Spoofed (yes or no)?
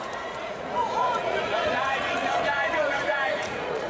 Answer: yes